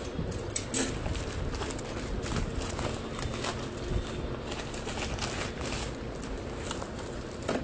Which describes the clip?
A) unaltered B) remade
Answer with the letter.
A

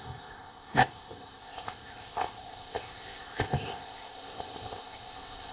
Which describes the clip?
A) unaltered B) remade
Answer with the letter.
B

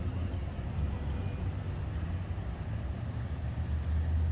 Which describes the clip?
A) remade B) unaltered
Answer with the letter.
B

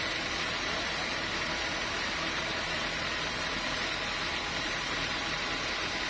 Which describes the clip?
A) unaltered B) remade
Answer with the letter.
A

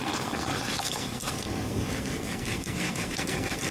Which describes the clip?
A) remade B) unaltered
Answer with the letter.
A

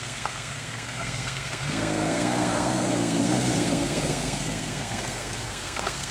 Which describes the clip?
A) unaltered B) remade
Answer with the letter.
B